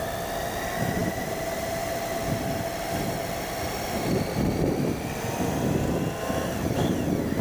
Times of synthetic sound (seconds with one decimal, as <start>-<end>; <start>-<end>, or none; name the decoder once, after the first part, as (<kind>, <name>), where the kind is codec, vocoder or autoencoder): 1.0-1.9 (vocoder, BigVGAN v2); 3.2-5.6